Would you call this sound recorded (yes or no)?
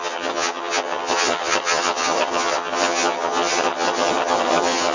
no